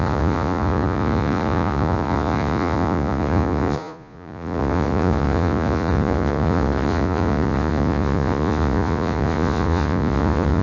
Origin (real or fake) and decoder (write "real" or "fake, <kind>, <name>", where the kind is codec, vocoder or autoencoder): fake, vocoder, Vocos